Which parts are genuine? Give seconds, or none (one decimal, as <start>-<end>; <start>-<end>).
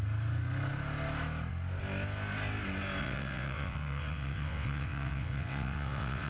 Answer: 0.0-3.0